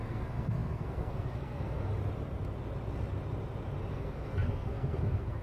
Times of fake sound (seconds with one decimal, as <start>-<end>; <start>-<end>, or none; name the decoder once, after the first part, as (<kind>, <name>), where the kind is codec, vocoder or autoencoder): 0.0-1.9 (codec, SNAC); 3.9-5.4